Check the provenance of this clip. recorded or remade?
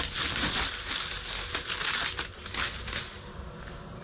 recorded